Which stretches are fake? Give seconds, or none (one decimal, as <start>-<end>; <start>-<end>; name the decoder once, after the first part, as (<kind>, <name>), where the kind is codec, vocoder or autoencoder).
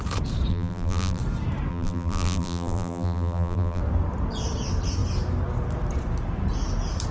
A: 0.5-1.2 (vocoder, BigVGAN v2); 1.7-3.8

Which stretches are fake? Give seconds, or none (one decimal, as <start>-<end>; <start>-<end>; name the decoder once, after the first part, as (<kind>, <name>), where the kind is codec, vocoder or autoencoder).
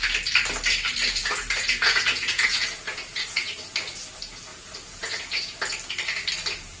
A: 1.2-3.5 (vocoder, Vocos); 4.5-5.6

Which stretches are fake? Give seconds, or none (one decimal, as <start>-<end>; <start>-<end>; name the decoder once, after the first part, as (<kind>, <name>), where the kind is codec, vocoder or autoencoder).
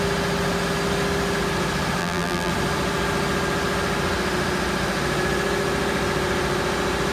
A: 2.0-2.5 (vocoder, BigVGAN v2)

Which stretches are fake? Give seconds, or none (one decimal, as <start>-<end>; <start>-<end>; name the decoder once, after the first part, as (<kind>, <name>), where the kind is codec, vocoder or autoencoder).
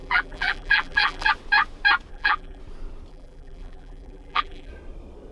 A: 0.0-1.3 (vocoder, BigVGAN v2); 2.1-2.6; 3.1-4.7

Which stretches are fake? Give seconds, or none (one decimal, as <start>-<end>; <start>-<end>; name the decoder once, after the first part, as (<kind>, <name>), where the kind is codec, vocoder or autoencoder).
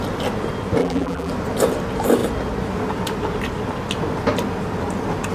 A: 0.8-1.3 (vocoder, BigVGAN v2)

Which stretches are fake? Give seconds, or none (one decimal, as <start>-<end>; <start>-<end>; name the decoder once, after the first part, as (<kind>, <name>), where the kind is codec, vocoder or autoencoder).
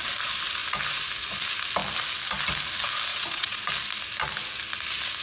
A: 3.1-3.7 (vocoder, WaveNeXt)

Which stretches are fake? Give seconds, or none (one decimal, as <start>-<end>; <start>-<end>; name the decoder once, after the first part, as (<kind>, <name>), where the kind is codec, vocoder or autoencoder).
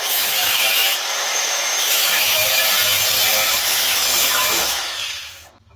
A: 0.0-2.6 (autoencoder, DAC-VAE); 3.3-5.8